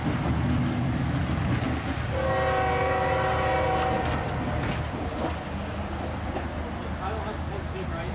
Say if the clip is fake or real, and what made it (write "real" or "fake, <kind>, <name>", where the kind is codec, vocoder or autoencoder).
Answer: real